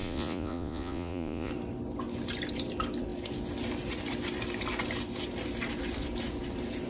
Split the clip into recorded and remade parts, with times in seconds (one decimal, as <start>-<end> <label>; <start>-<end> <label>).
0.0-1.5 remade; 1.5-6.9 recorded